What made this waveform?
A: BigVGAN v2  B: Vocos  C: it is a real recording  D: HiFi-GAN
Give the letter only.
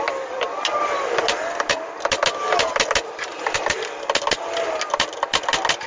C